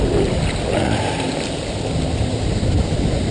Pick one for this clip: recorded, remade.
recorded